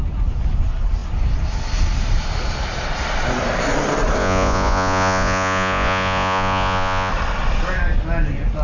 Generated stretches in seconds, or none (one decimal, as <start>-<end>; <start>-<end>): 4.2-7.1